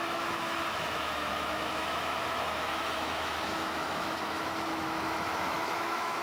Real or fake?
fake